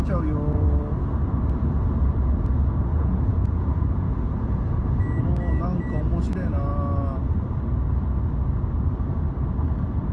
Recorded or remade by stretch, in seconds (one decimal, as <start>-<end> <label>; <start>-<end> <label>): 0.0-2.9 recorded; 2.9-4.9 remade; 4.9-10.1 recorded